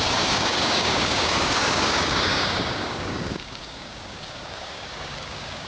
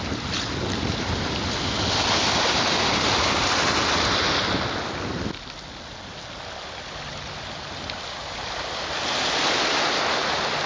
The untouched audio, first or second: second